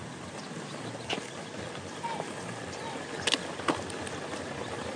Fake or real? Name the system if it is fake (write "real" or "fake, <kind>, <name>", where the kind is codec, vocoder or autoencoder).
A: real